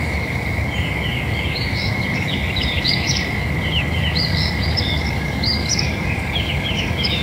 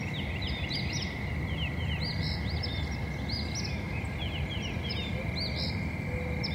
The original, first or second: second